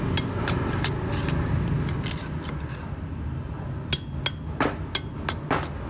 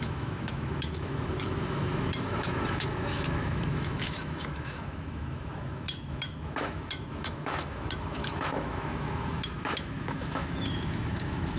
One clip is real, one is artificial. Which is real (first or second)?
first